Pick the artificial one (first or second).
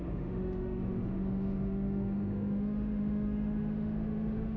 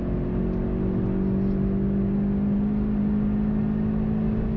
first